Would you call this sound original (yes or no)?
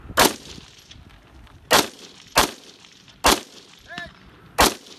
yes